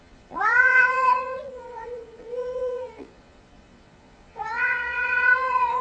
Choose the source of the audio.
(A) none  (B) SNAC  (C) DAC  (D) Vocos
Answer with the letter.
D